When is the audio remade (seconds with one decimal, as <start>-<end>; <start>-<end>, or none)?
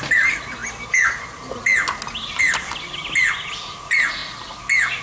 none